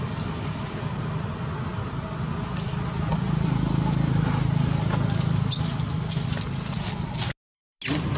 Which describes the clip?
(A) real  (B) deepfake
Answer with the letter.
A